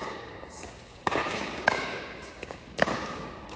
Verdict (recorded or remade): remade